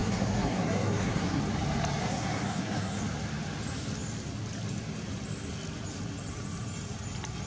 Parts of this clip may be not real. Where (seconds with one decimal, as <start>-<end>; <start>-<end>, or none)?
0.0-1.4; 2.0-3.0